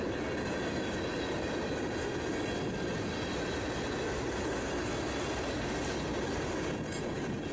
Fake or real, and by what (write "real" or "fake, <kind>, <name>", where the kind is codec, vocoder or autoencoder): real